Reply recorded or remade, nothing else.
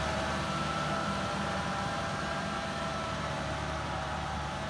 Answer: remade